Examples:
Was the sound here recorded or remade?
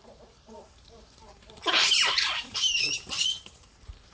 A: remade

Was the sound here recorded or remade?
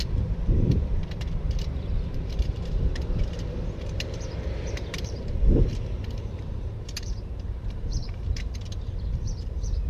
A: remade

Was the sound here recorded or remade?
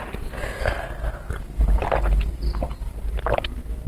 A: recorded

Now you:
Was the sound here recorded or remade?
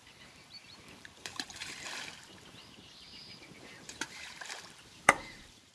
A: remade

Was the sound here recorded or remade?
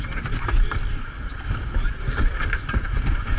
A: recorded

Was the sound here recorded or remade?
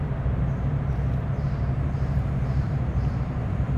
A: remade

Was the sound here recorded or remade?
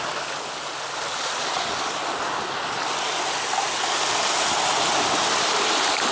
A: recorded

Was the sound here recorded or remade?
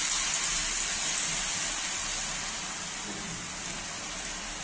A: recorded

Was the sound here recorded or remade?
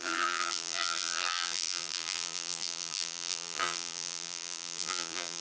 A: remade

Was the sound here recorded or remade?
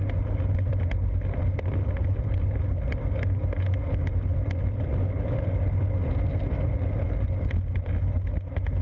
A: recorded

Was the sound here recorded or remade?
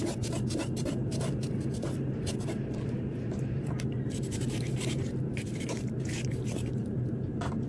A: remade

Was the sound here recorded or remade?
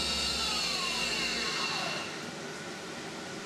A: recorded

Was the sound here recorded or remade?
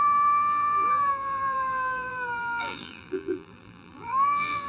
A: remade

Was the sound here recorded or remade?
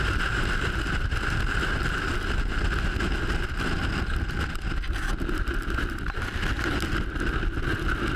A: recorded